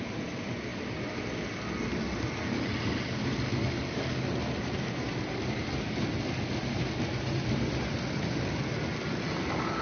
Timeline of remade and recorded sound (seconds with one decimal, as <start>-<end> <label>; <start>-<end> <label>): 0.0-9.8 recorded